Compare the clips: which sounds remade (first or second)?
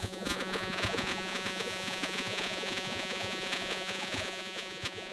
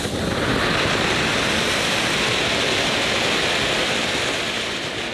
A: first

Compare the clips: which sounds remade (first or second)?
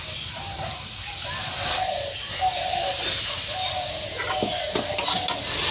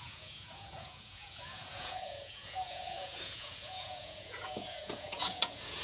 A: second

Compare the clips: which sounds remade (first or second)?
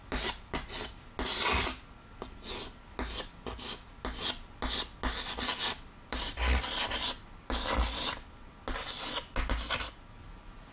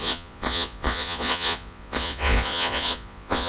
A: second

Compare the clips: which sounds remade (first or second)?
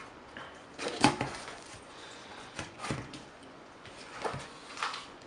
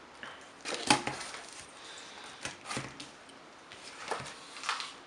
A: first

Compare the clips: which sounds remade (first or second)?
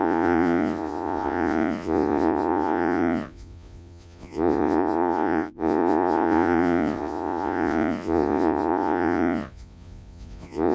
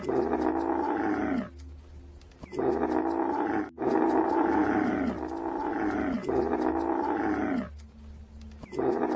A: first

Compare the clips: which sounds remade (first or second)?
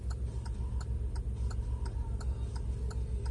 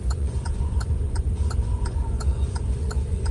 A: second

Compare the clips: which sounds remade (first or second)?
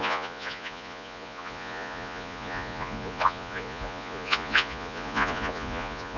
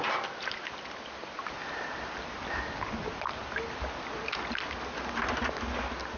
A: first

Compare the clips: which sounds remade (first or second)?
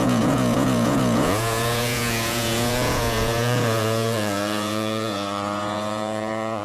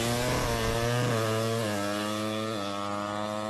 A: first